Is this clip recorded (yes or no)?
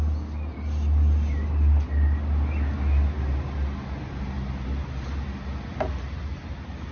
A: yes